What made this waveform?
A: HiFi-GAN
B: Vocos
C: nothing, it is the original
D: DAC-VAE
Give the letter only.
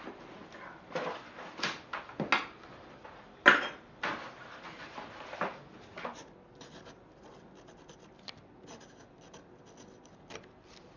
C